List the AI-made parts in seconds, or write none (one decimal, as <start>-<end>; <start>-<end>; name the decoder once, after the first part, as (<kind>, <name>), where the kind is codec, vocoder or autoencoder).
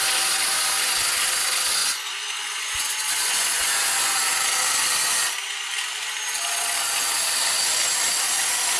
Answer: 1.8-4.1 (vocoder, Vocos)